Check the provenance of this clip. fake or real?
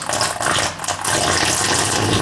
real